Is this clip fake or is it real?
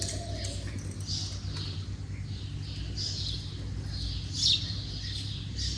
real